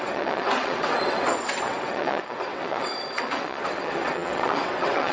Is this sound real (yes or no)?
no